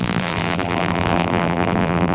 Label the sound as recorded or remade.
remade